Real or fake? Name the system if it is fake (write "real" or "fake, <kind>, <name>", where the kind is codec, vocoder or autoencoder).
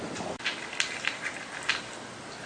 real